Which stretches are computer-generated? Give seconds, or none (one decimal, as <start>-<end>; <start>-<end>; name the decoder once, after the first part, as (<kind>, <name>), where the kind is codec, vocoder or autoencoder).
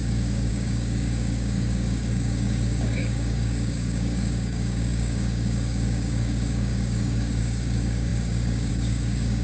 0.0-9.4 (codec, DAC)